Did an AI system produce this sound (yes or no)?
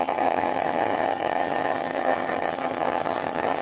yes